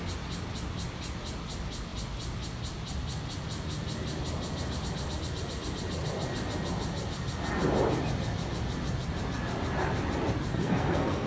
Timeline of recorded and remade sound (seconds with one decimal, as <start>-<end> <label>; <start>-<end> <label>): 0.0-10.5 recorded; 10.5-11.3 remade